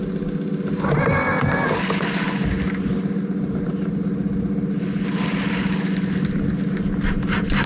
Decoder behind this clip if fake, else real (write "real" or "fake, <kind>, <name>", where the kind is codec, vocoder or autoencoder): real